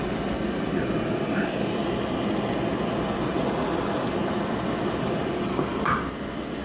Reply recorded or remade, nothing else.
recorded